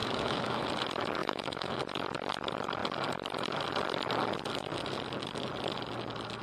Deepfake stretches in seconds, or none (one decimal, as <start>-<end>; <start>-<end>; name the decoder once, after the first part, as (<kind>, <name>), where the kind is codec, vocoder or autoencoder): 0.0-0.7 (autoencoder, DAC-VAE); 1.2-1.8